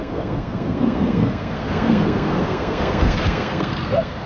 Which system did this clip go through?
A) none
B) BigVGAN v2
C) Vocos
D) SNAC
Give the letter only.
D